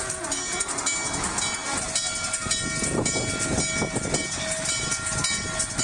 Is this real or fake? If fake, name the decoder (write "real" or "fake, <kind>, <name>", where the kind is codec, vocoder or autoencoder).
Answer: real